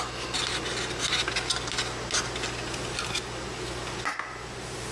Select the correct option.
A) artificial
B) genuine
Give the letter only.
B